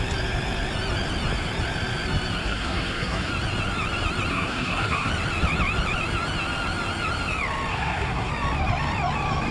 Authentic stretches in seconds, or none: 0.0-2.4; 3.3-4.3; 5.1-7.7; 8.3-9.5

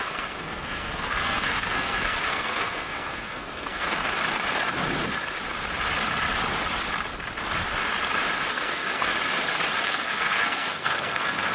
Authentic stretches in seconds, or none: 4.0-8.5; 9.1-9.8

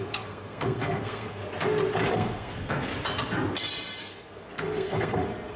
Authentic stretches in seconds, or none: 1.4-2.1; 2.9-4.0